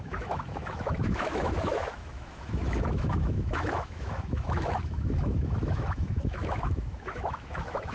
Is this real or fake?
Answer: fake